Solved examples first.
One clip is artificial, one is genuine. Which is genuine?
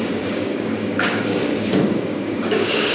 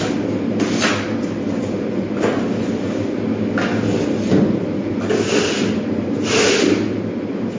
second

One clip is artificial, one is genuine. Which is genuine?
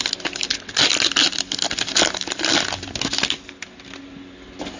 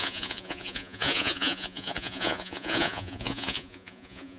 first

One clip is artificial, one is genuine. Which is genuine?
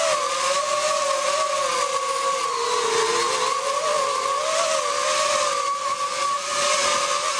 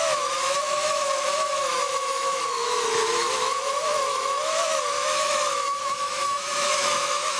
first